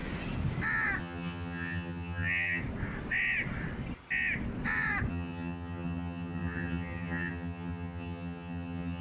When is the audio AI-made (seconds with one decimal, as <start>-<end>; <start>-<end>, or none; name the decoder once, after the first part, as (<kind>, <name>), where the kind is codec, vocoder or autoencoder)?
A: 1.0-2.6 (vocoder, HiFi-GAN); 5.1-9.0